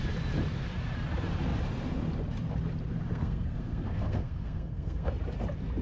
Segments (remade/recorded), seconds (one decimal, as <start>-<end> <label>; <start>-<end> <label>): 0.0-3.1 recorded; 3.1-5.1 remade; 5.1-5.8 recorded